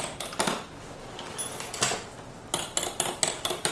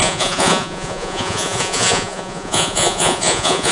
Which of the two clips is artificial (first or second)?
second